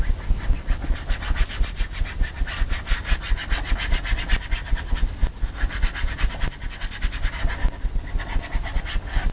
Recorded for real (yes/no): yes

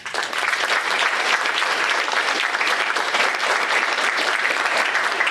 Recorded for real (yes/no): no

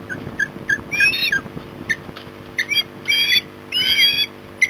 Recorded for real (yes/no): yes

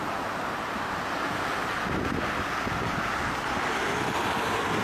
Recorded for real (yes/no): yes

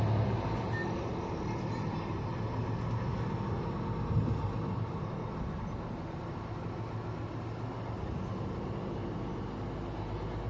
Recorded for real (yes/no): yes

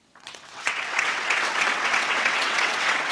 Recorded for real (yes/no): no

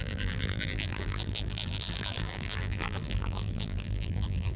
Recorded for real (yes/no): no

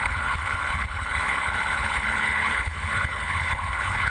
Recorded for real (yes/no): no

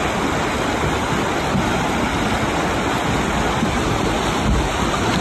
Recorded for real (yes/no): yes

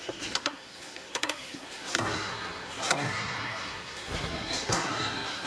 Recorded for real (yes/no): no